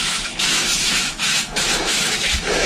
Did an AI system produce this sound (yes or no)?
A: yes